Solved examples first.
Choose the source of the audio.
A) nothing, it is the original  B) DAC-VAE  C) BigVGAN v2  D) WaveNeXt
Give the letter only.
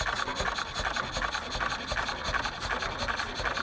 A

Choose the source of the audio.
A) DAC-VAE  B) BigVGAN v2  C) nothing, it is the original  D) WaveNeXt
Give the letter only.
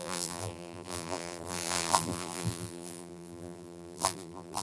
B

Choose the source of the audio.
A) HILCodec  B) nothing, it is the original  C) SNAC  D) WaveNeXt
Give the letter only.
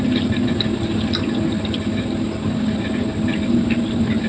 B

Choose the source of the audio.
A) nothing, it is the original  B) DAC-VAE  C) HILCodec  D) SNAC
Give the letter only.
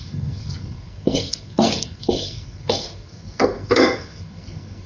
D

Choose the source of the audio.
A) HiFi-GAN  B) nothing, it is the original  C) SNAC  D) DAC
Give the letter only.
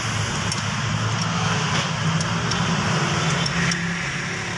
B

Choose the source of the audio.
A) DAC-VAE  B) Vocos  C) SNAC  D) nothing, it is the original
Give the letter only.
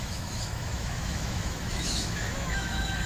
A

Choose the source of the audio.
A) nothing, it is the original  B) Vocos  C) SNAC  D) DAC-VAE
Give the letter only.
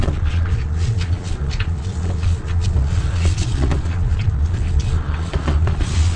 B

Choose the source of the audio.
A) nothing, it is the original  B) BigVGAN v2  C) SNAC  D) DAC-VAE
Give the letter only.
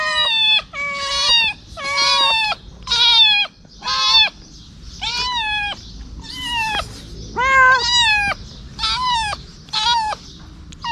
A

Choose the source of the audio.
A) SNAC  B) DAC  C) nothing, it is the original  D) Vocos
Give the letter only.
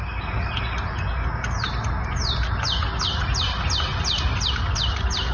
C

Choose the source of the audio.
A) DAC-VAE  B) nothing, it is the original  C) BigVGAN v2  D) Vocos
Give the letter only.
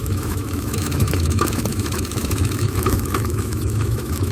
A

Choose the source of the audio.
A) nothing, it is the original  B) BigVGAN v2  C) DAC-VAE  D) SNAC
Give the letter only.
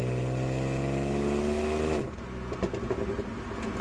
A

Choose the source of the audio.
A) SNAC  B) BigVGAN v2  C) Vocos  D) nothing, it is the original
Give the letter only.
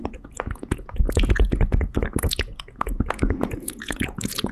C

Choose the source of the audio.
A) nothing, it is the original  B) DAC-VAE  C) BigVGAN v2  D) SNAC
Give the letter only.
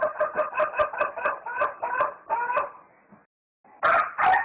A